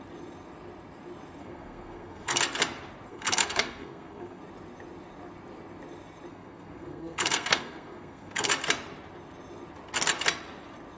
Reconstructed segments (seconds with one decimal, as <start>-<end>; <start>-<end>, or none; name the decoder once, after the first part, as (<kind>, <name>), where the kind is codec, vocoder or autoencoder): 1.4-2.4 (codec, SNAC); 3.1-4.4; 6.3-8.5